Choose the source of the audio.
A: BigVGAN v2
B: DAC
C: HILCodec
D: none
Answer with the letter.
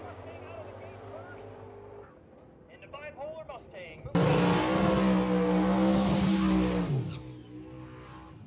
D